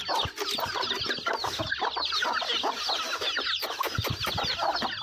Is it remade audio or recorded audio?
recorded